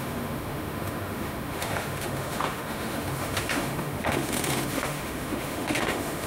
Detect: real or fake fake